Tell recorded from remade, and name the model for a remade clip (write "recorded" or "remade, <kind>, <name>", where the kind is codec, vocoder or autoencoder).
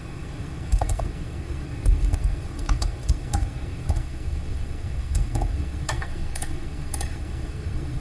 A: remade, codec, SNAC